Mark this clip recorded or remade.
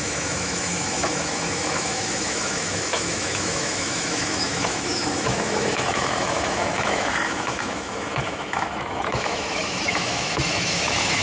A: remade